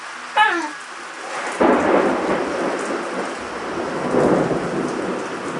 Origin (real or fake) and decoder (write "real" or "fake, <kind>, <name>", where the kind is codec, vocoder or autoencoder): real